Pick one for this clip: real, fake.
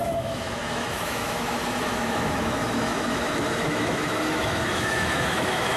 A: fake